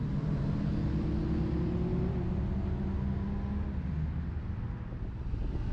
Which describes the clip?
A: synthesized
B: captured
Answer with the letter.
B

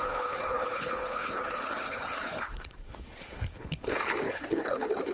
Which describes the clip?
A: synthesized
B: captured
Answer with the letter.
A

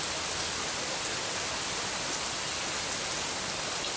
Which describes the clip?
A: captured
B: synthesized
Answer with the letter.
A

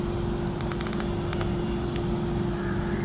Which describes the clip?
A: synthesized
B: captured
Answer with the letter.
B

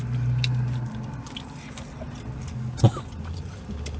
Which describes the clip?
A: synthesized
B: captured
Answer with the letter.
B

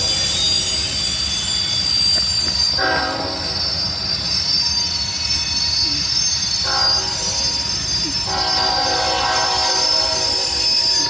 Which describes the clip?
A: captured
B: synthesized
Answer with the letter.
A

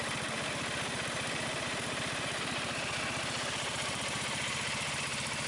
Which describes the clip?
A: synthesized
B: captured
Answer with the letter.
A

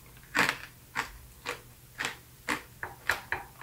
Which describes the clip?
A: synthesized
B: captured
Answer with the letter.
B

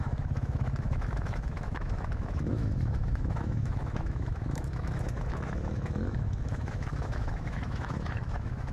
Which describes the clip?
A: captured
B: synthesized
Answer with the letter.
B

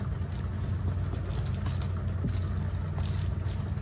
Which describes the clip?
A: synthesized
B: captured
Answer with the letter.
B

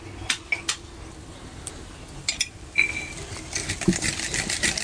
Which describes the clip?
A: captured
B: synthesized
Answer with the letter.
A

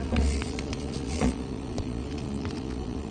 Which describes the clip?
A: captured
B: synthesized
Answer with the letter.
B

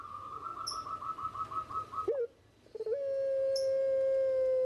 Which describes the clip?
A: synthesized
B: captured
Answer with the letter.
B